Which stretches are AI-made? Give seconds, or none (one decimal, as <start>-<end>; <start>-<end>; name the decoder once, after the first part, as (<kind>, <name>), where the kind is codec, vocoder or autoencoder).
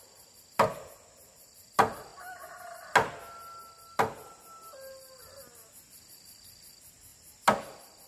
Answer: none